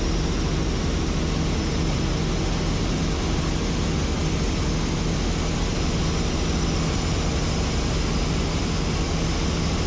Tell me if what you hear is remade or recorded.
recorded